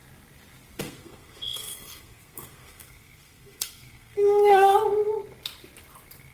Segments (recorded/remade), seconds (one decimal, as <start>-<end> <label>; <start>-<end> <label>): 0.0-0.8 recorded; 0.8-4.7 remade; 4.7-6.3 recorded